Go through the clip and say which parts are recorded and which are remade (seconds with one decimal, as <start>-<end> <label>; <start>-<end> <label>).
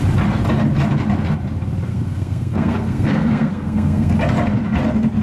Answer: 0.0-1.9 recorded; 1.9-4.1 remade; 4.1-5.2 recorded